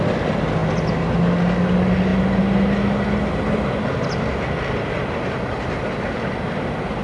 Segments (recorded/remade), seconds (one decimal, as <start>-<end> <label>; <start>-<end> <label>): 0.0-7.0 recorded